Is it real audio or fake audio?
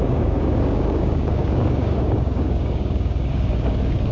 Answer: fake